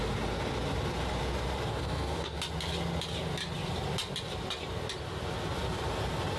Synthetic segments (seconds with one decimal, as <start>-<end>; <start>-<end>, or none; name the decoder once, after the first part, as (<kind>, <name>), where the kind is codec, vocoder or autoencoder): 1.7-2.4 (codec, SNAC)